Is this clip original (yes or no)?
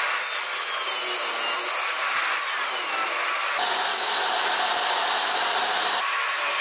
yes